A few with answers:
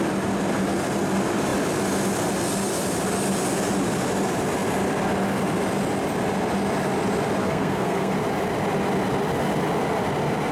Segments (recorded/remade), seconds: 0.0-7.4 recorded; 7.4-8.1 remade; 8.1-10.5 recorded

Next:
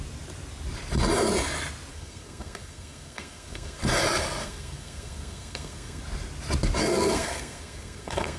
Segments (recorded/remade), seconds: 0.0-1.9 recorded; 1.9-3.8 remade; 3.8-4.4 recorded; 4.4-6.0 remade; 6.0-6.8 recorded; 6.8-8.4 remade